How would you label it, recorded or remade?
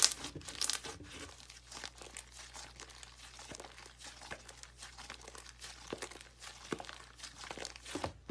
recorded